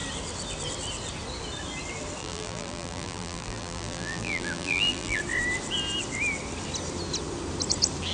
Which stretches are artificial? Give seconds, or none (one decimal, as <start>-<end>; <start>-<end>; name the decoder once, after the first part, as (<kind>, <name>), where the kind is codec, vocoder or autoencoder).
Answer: 2.2-5.2 (vocoder, BigVGAN v2)